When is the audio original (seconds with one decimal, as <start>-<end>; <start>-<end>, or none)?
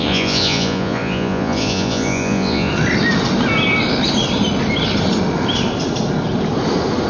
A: 2.7-7.1